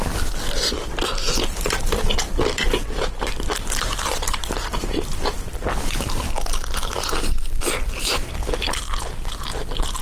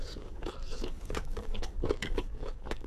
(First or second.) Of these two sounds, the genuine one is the first